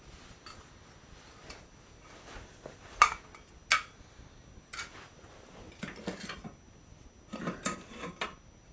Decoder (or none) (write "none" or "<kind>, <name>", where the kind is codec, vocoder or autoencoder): none